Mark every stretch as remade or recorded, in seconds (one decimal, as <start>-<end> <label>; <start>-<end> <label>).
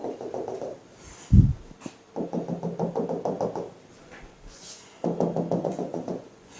0.0-4.0 recorded; 4.0-5.0 remade; 5.0-5.6 recorded; 5.6-6.6 remade